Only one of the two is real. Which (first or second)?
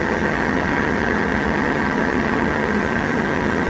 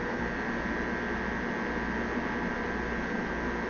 second